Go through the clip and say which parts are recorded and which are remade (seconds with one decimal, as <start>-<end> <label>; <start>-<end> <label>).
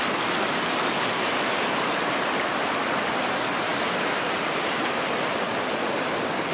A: 0.0-6.5 recorded